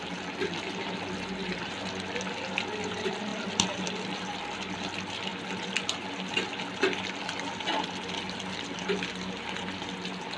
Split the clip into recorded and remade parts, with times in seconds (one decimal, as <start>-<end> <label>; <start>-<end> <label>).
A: 0.0-10.4 recorded